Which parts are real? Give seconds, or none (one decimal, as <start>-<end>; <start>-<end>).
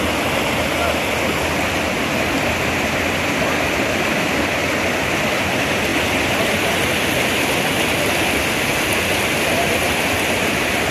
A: 0.0-10.9